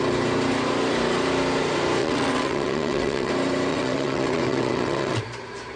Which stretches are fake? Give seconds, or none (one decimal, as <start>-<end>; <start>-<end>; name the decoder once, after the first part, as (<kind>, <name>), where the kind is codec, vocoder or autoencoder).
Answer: 2.0-3.3 (vocoder, WaveNeXt); 3.7-5.2